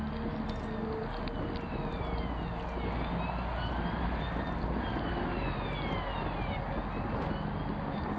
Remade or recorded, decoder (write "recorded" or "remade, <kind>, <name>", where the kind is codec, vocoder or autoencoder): recorded